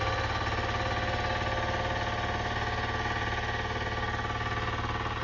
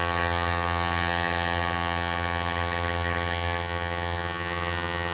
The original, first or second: first